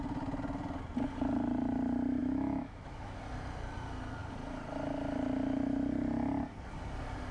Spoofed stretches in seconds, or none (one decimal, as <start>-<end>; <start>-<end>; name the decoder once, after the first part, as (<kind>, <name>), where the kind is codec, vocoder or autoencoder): 2.2-3.2 (autoencoder, DAC-VAE)